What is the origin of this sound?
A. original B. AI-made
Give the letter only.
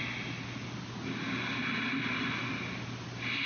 A